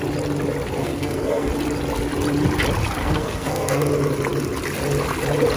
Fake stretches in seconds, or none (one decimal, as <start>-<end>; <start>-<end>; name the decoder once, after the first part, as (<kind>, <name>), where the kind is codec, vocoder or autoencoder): 0.8-1.5 (codec, SNAC); 3.0-3.9